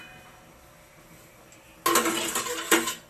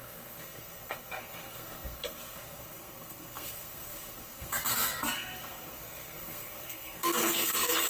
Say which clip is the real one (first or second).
first